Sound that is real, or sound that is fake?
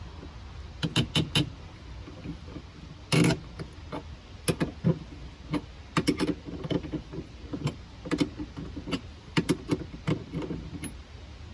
real